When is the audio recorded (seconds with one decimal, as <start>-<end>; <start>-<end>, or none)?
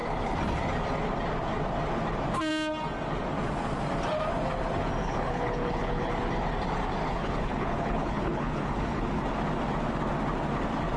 0.0-5.0; 6.1-7.0; 9.2-11.0